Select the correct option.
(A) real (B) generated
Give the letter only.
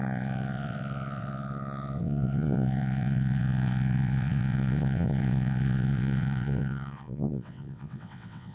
B